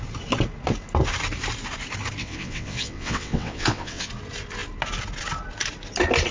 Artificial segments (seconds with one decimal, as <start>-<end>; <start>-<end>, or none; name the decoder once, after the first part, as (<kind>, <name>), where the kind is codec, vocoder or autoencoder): 2.2-4.1 (vocoder, WaveNeXt)